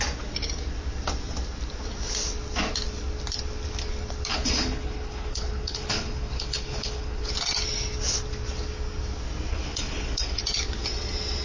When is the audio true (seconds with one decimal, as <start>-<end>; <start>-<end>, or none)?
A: 0.0-4.3; 7.3-9.5; 10.4-11.4